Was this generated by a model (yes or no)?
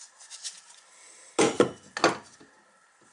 no